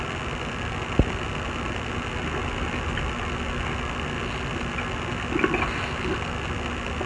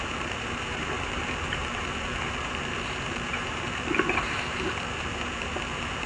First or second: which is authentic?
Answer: first